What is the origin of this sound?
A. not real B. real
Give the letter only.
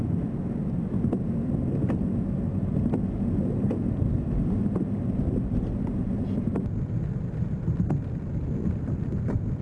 B